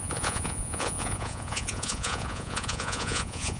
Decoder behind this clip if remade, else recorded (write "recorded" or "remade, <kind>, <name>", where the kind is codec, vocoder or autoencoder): remade, vocoder, Vocos